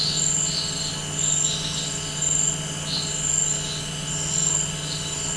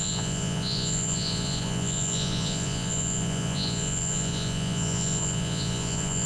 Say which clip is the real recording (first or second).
first